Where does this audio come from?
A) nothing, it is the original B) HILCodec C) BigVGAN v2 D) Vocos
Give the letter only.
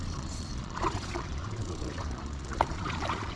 D